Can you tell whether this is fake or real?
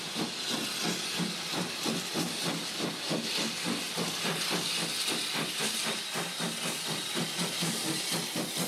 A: real